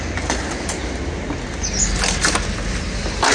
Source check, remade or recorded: recorded